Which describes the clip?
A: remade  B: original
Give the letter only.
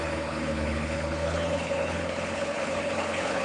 A